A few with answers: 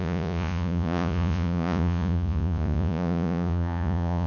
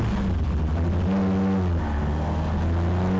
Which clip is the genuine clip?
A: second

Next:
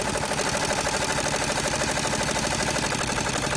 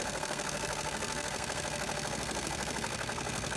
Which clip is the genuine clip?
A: first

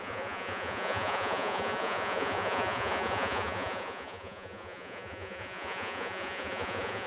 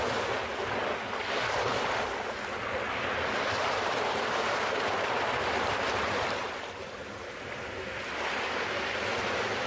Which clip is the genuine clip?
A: second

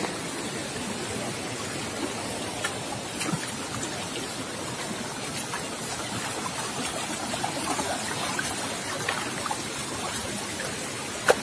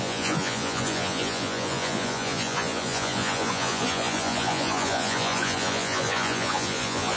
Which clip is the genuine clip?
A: first